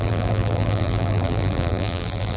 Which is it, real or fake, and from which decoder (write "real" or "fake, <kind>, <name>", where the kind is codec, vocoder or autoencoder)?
fake, vocoder, BigVGAN v2